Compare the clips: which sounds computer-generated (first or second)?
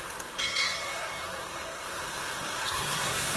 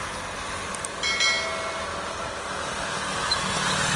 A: first